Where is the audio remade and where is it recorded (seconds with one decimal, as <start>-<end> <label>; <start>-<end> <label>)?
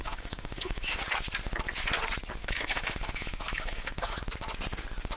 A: 0.0-0.9 remade; 0.9-2.4 recorded; 2.4-4.2 remade; 4.2-5.2 recorded